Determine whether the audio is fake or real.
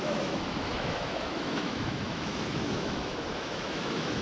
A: fake